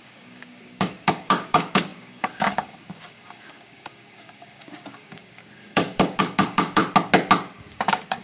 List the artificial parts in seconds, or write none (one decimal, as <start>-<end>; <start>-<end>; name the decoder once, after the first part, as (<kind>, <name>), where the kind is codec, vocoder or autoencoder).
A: 0.0-6.8 (codec, DAC); 7.7-8.2